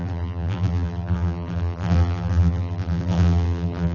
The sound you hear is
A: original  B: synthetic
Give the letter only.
B